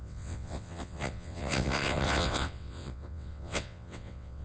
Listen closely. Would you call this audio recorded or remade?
remade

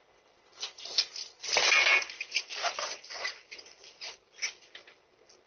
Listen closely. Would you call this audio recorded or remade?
recorded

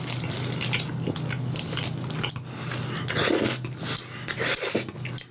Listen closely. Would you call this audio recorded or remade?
recorded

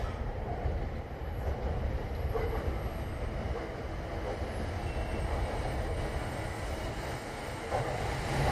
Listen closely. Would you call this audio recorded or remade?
recorded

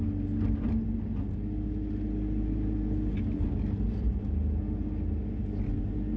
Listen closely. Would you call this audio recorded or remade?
recorded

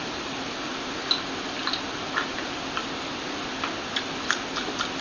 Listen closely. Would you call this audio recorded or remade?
recorded